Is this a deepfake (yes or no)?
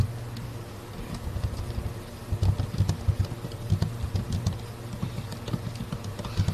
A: no